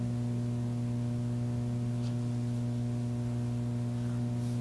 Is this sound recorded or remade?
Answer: recorded